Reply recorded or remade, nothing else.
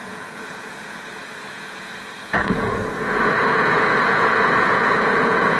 remade